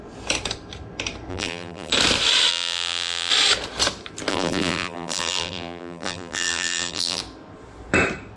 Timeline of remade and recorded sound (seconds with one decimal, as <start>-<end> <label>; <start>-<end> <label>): 0.0-1.3 recorded; 1.3-1.9 remade; 1.9-2.5 recorded; 2.5-3.3 remade; 3.3-4.3 recorded; 4.3-7.2 remade; 7.2-8.4 recorded